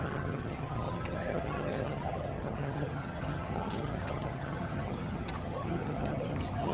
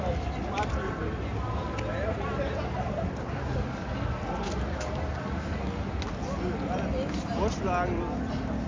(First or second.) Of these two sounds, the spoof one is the first